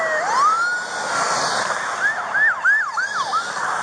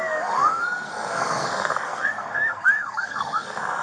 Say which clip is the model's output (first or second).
second